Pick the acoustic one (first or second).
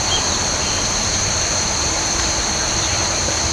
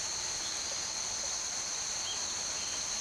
second